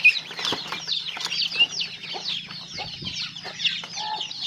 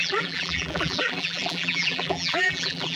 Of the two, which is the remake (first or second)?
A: second